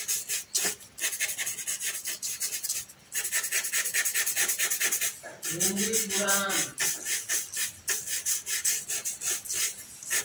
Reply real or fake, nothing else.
real